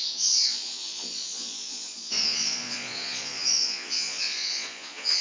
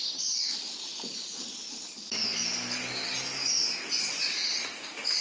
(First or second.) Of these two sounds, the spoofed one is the first